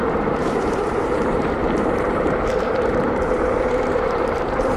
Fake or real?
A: fake